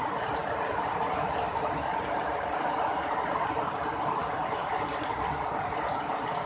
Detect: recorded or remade recorded